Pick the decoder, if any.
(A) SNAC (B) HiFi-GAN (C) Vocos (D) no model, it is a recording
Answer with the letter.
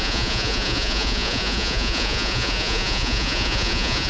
C